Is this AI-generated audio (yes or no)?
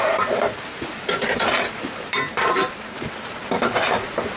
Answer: yes